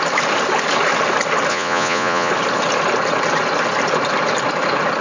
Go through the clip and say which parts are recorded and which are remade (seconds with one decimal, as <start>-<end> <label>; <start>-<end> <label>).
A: 0.0-1.5 recorded; 1.5-2.3 remade; 2.3-5.0 recorded